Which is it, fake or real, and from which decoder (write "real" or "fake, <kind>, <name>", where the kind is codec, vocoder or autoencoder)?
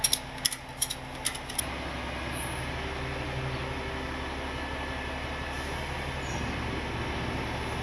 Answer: real